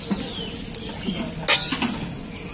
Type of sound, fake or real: real